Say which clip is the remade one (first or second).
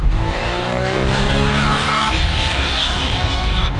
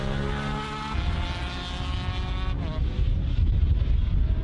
first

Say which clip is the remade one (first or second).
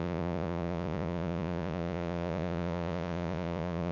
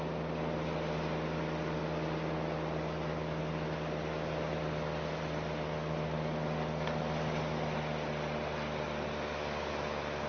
first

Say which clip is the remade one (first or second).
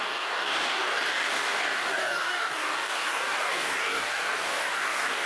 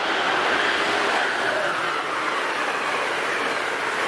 first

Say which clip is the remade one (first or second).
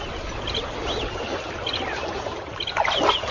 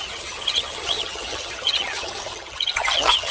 second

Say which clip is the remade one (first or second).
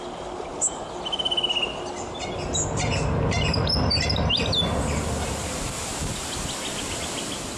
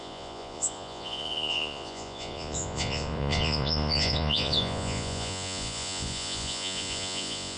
second